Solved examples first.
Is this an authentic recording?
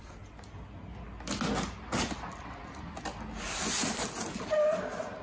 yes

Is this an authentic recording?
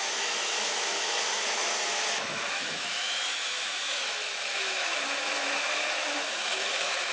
no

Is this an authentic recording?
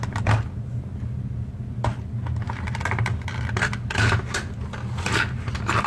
yes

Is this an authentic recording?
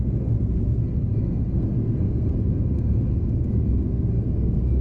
no